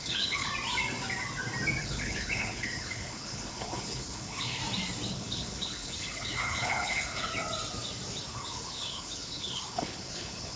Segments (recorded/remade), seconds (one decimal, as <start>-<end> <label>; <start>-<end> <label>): 0.0-0.5 remade; 0.5-1.8 recorded; 1.8-4.6 remade; 4.6-5.1 recorded; 5.1-7.3 remade; 7.3-8.3 recorded; 8.3-10.6 remade